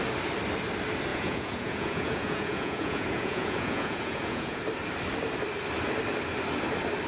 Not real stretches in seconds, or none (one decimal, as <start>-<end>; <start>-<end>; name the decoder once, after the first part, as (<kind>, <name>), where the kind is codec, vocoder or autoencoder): 1.1-4.6 (vocoder, Vocos)